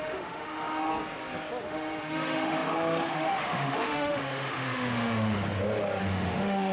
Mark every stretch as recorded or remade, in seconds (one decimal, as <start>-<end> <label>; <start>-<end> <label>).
0.0-0.9 remade; 0.9-1.6 recorded; 1.6-5.4 remade; 5.4-6.0 recorded; 6.0-6.7 remade